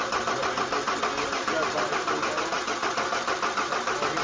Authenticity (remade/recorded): recorded